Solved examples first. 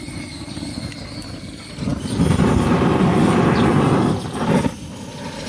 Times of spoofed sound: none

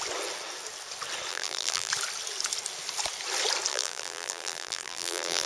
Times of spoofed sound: 1.3-1.9 (vocoder, BigVGAN v2); 3.7-5.5

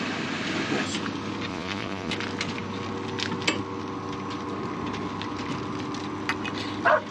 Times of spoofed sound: 1.5-2.1 (vocoder, Vocos)

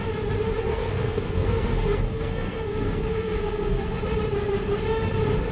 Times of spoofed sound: 0.7-4.0 (codec, SNAC)